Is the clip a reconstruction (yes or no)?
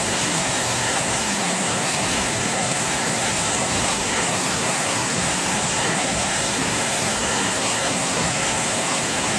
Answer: yes